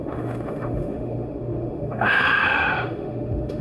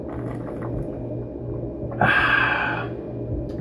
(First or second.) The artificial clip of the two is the first